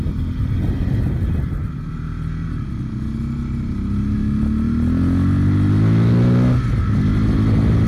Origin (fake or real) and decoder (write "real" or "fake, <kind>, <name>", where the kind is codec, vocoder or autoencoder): real